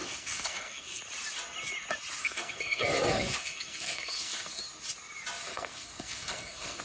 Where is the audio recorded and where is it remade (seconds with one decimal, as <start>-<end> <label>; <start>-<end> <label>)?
0.0-1.0 remade; 1.0-2.2 recorded; 2.2-4.6 remade; 4.6-5.5 recorded; 5.5-6.8 remade